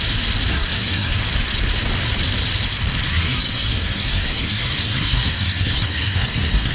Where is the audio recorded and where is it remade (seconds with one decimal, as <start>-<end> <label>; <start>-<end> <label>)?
0.0-0.5 recorded; 0.5-1.2 remade; 1.2-3.1 recorded; 3.1-6.7 remade